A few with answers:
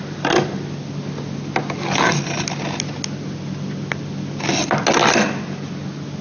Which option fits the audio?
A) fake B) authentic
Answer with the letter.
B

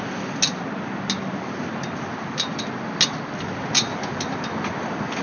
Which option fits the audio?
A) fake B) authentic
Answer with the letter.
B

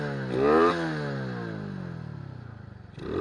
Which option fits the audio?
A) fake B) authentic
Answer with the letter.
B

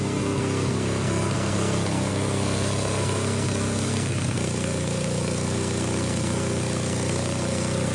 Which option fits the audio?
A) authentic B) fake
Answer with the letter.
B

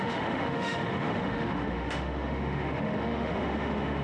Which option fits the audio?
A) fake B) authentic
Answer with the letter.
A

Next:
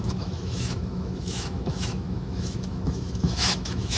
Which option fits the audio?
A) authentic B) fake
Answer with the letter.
B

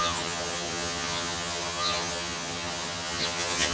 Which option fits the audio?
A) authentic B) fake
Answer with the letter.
B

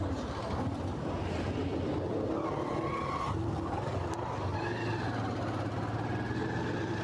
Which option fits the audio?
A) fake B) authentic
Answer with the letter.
B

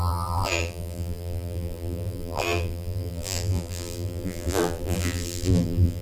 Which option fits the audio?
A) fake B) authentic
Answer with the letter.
A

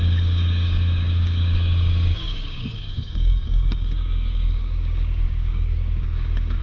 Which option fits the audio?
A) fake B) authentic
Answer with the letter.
A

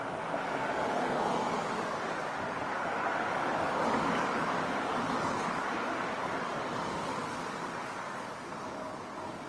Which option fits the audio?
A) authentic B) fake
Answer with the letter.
B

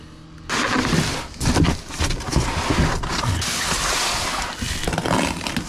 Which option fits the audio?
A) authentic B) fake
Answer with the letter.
A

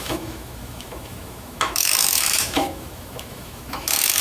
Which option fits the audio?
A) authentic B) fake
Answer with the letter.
B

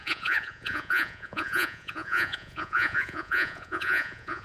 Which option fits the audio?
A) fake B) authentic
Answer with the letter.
A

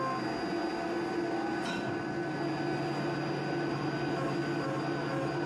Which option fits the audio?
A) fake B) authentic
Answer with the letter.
B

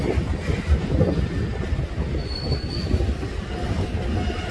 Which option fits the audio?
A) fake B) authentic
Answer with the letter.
B